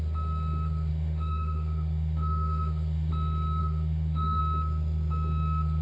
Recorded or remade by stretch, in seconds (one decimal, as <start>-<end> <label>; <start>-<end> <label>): 0.0-0.9 recorded; 0.9-3.1 remade; 3.1-3.6 recorded; 3.6-4.4 remade; 4.4-5.8 recorded